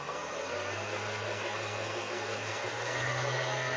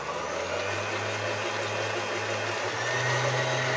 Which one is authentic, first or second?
second